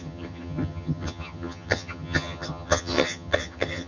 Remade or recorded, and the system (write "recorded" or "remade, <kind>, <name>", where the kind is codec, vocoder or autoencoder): remade, vocoder, HiFi-GAN